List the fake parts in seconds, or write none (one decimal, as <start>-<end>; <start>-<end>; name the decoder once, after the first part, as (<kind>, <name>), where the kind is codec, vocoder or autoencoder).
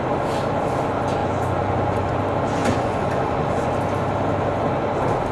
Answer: 1.2-2.2 (vocoder, Vocos); 2.6-3.7